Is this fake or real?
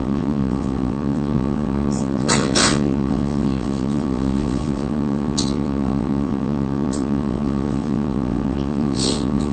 fake